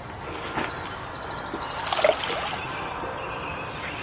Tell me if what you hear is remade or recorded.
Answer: recorded